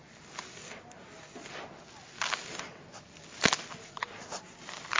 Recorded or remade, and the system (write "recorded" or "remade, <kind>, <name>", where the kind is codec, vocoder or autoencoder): recorded